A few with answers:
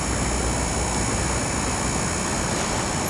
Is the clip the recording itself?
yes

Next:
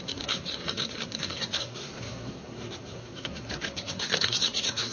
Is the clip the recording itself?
no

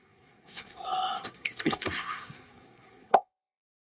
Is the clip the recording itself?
no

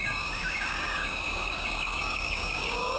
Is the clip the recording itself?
no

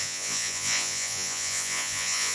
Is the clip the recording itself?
no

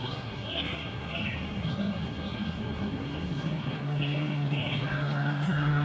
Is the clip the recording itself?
no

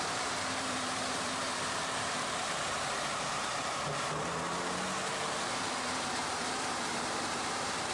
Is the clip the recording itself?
no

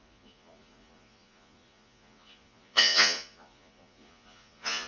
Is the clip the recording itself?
no